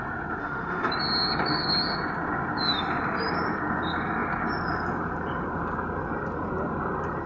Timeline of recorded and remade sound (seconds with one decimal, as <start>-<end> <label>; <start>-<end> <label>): 0.0-0.4 recorded; 0.4-0.9 remade; 0.9-7.3 recorded